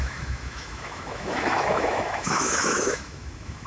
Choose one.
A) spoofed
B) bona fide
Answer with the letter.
A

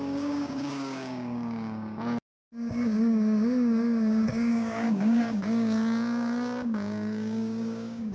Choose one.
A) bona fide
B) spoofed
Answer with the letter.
B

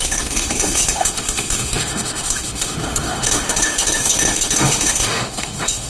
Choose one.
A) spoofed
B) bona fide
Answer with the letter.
A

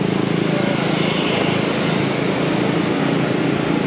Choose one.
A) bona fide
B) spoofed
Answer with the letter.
A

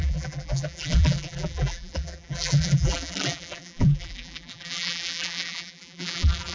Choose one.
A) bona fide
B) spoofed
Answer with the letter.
B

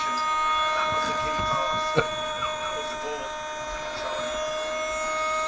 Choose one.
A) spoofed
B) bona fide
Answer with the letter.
B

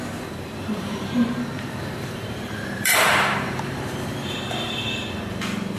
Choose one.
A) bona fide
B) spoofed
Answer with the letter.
B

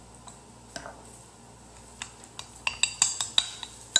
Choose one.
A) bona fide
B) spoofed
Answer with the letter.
A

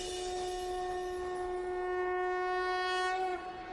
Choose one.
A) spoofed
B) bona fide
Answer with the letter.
B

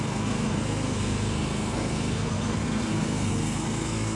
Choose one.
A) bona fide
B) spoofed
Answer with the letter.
B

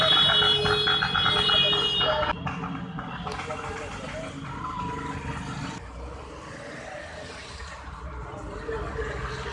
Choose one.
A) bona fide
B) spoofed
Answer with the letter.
A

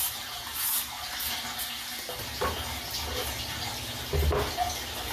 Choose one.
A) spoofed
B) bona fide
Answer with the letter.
B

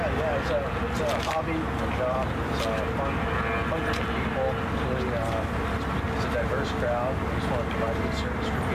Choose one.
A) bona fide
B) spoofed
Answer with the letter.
A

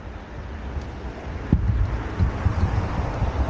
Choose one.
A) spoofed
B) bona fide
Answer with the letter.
B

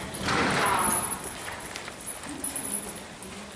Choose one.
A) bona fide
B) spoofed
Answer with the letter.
A